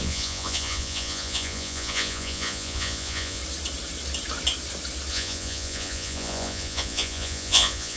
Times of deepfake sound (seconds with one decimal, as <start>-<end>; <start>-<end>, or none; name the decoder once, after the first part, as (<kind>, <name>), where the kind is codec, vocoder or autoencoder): 0.0-3.4 (vocoder, Vocos); 5.1-8.0